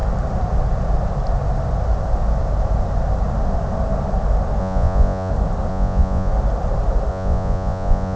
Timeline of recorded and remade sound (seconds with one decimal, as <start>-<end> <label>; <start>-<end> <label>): 0.0-4.6 recorded; 4.6-5.3 remade; 5.3-5.7 recorded; 5.7-6.3 remade; 6.3-7.1 recorded; 7.1-8.2 remade

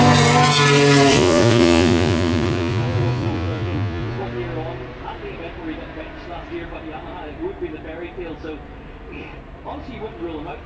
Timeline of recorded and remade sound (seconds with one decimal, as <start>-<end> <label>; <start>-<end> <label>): 0.0-1.1 recorded; 1.1-4.2 remade; 4.2-10.7 recorded